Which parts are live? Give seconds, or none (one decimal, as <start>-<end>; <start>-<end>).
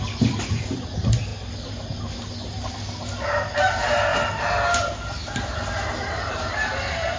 0.0-7.2